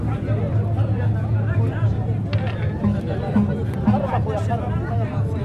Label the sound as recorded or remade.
recorded